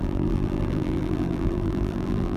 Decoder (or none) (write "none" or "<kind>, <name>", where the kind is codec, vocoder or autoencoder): vocoder, BigVGAN v2